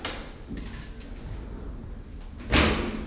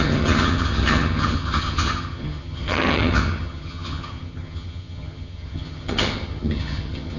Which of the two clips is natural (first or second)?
first